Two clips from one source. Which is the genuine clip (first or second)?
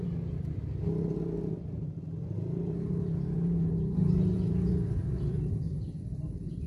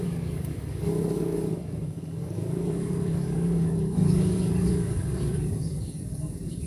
first